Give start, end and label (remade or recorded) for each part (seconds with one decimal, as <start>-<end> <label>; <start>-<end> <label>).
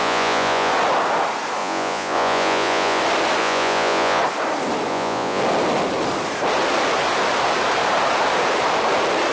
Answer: 0.0-0.7 remade; 0.7-1.6 recorded; 1.6-3.0 remade; 3.0-3.4 recorded; 3.4-4.2 remade; 4.2-4.9 recorded; 4.9-5.4 remade; 5.4-9.3 recorded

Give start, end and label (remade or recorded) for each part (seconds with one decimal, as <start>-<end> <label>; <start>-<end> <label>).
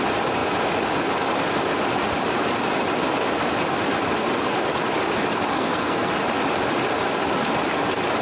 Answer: 0.0-5.5 recorded; 5.5-6.1 remade; 6.1-8.2 recorded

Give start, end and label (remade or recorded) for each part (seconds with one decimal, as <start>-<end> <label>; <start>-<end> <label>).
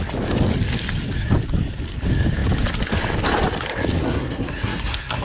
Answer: 0.0-4.0 recorded; 4.0-5.2 remade